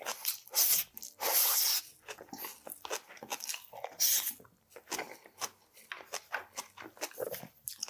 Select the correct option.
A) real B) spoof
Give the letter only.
A